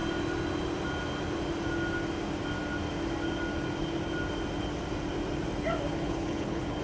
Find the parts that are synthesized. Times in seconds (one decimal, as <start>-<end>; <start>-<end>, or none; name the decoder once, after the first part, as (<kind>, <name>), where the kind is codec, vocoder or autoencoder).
5.9-6.8 (codec, HILCodec)